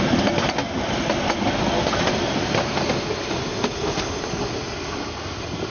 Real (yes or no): yes